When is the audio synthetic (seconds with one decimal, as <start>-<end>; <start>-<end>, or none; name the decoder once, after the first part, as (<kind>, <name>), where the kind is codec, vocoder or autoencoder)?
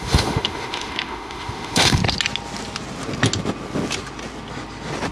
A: 0.0-2.0 (autoencoder, DAC-VAE)